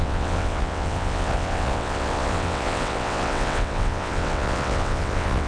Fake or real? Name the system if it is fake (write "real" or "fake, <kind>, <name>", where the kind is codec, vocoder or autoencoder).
fake, vocoder, WaveNeXt